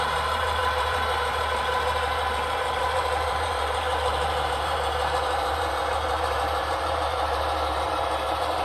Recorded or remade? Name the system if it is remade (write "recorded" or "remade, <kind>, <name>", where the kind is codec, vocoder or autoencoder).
remade, vocoder, BigVGAN v2